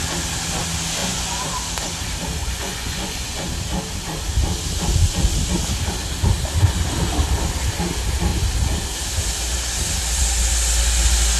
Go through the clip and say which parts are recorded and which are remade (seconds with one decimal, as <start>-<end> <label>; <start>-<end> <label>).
0.0-1.0 recorded; 1.0-1.5 remade; 1.5-2.4 recorded; 2.4-3.5 remade; 3.5-11.4 recorded